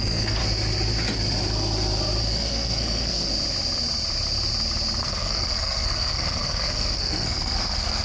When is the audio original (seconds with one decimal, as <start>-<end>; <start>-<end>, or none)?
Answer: 0.4-2.3; 3.3-5.0